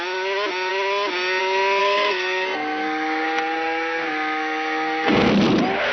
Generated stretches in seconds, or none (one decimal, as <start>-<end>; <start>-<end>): 1.8-5.3